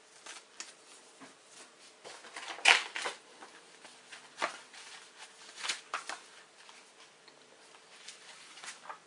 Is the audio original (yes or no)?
yes